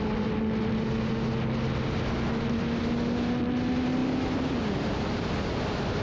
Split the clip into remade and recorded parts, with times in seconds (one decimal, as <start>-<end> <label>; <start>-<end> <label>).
0.0-6.0 recorded